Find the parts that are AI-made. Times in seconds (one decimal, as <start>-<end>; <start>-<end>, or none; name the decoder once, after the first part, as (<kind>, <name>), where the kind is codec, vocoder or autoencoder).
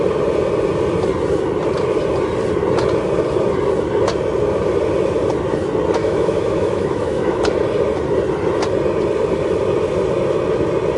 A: 6.0-7.4 (autoencoder, DAC-VAE)